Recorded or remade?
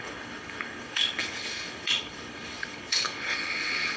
remade